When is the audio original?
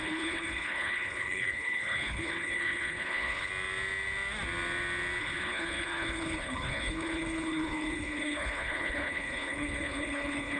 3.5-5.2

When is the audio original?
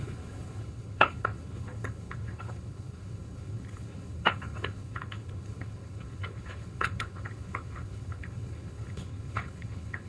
none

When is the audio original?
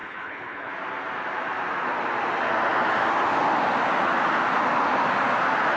0.7-5.8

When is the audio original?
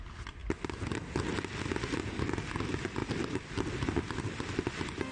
0.0-5.1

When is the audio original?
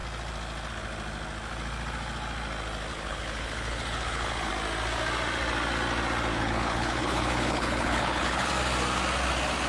0.0-2.9; 4.5-6.3; 8.5-9.7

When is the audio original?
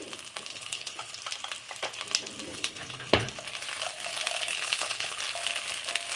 0.0-0.5; 1.2-2.5; 3.3-4.5; 5.2-6.2